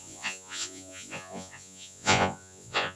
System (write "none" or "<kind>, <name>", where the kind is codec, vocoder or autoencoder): vocoder, Vocos